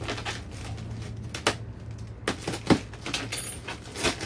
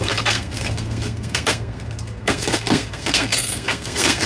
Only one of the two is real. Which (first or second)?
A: first